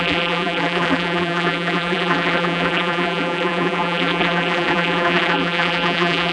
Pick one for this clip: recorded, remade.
remade